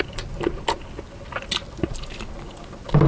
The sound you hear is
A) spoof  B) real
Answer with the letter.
B